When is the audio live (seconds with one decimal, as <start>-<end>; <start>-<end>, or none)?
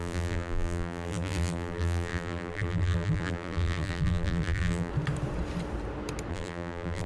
4.9-6.3